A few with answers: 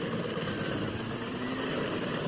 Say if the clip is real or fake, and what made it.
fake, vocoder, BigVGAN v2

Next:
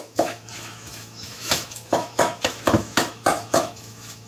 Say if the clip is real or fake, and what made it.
fake, autoencoder, DAC-VAE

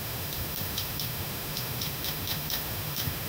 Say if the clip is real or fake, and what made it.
fake, autoencoder, DAC-VAE